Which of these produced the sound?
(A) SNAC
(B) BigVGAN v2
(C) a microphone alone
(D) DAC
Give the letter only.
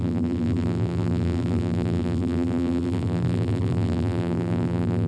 B